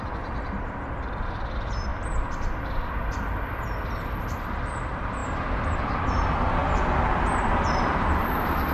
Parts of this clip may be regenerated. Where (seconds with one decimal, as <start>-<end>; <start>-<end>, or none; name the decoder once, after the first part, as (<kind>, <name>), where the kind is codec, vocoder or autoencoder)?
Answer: 0.0-1.9 (vocoder, BigVGAN v2); 4.4-6.6; 7.4-8.7